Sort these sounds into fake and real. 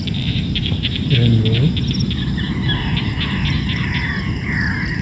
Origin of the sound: real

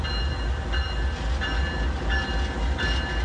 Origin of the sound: real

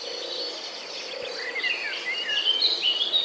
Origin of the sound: real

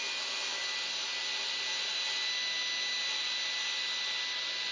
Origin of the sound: real